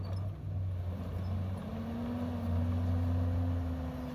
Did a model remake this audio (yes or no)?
no